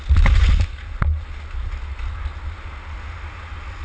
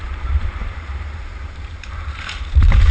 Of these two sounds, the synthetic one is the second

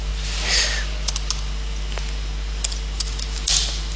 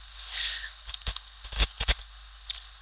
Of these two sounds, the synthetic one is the second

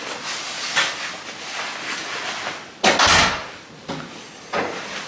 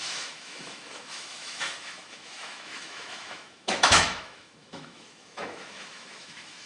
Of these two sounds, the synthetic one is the second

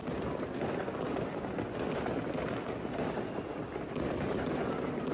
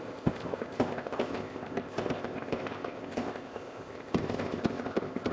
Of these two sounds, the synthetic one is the second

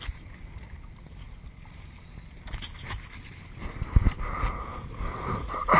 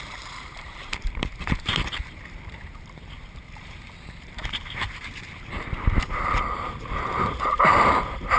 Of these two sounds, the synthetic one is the second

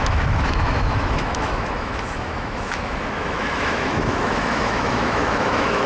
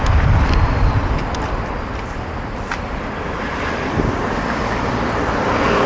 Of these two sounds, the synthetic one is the first